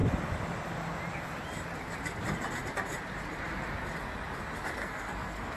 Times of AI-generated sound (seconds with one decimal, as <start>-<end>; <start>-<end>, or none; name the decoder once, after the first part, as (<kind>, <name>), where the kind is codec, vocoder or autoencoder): 4.8-5.6 (codec, SNAC)